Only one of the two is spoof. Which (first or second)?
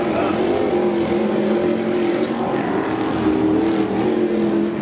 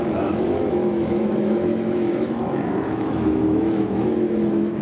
second